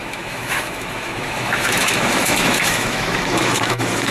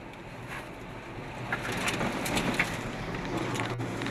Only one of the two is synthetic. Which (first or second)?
first